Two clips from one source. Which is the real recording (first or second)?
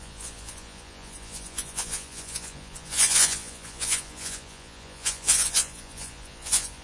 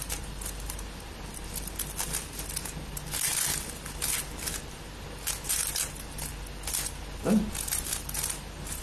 second